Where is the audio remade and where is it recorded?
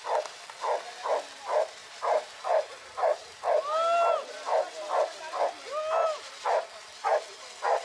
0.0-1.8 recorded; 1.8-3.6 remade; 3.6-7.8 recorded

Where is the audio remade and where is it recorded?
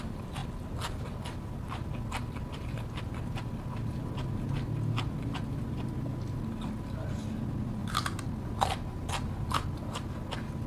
0.0-10.7 recorded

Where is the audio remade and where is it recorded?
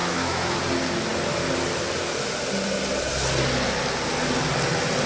0.0-0.6 remade; 0.6-5.1 recorded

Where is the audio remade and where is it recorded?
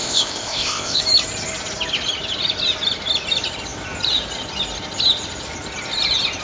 0.0-1.0 remade; 1.0-6.4 recorded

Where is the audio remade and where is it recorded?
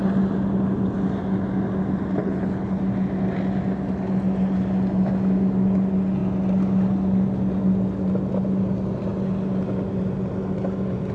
0.0-2.2 recorded; 2.2-2.8 remade; 2.8-11.1 recorded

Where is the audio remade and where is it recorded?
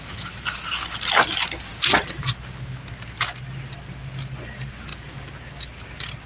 0.0-6.3 recorded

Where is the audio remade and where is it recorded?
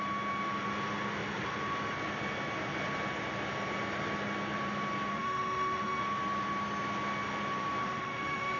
0.0-5.1 recorded; 5.1-6.0 remade; 6.0-7.8 recorded; 7.8-8.6 remade